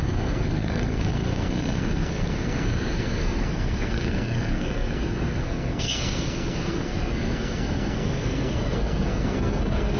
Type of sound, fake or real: fake